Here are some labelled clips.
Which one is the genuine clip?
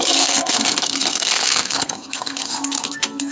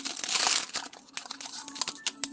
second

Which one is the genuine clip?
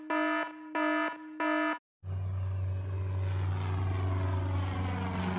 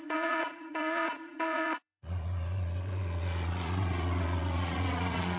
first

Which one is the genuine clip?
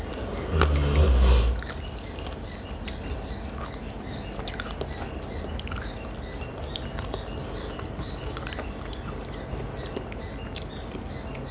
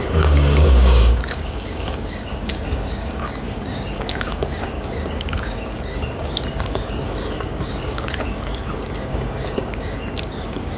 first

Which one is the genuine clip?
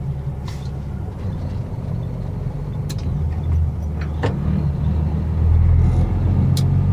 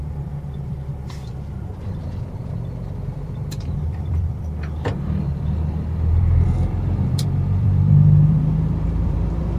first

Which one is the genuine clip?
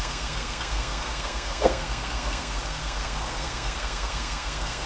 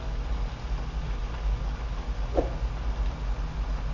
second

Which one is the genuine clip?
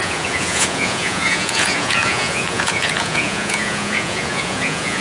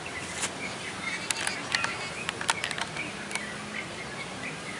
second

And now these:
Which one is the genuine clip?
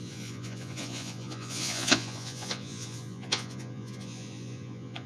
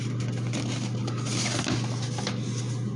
second